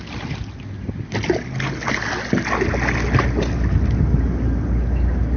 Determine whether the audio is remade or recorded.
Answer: recorded